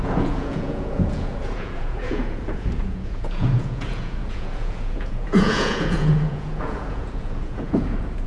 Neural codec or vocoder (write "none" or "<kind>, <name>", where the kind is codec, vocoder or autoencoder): vocoder, Vocos